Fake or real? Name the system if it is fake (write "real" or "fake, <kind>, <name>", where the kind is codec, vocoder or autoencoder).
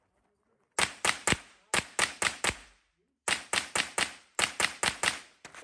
real